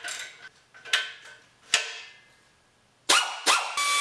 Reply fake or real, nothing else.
real